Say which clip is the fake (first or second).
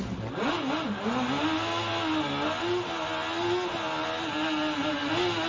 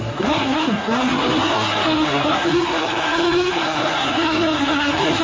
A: second